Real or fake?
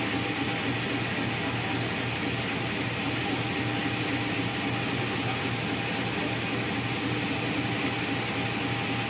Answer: real